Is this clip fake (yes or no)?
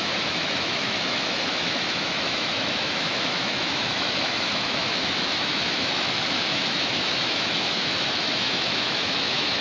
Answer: yes